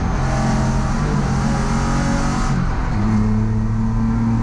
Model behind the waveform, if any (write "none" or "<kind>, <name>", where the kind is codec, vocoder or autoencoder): none